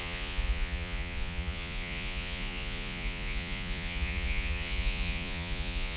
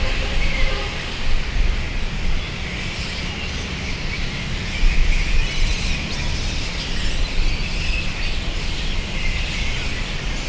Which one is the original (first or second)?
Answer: second